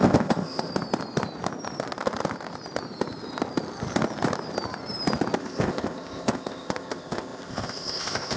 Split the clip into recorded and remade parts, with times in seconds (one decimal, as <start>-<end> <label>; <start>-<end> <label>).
0.0-0.7 remade; 0.7-5.4 recorded; 5.4-8.4 remade